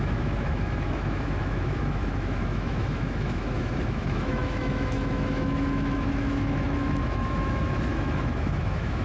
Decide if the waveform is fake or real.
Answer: fake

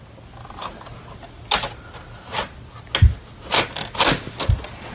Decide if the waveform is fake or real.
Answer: real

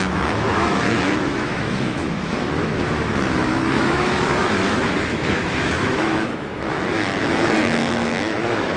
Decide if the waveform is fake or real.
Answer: fake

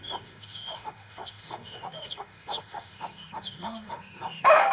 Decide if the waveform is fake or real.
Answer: fake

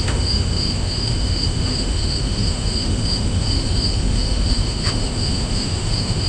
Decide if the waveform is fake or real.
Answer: fake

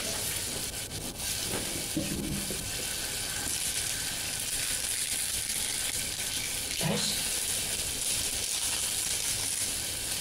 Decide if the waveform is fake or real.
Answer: real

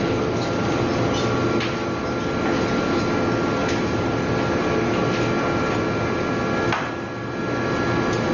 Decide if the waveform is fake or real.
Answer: real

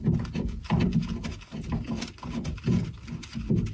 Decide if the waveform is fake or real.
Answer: real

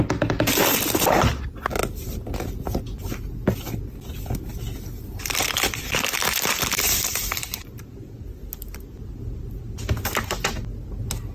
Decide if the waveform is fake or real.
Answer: real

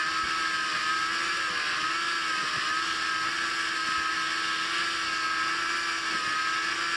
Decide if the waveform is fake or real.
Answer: real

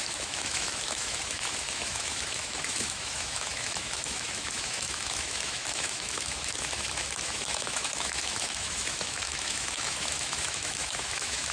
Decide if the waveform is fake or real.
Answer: fake